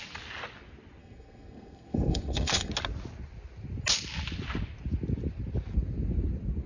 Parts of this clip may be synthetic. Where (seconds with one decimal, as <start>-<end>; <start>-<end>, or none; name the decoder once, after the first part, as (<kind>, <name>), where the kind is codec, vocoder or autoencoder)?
1.0-2.7 (codec, SNAC)